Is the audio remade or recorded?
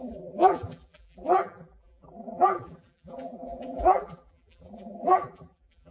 remade